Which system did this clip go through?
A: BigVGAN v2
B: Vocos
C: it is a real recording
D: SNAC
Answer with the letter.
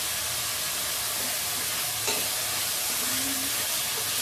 C